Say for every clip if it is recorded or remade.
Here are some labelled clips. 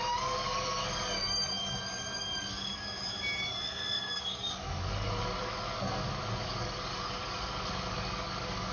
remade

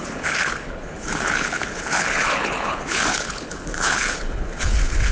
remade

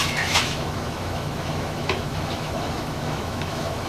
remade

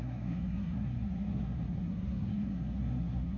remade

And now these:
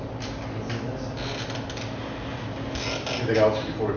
recorded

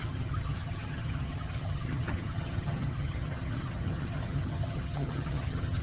remade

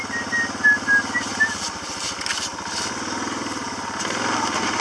recorded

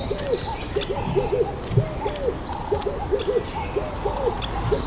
recorded